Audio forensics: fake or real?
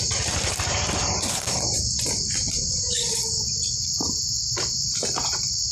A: fake